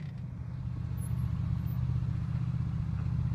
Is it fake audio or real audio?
real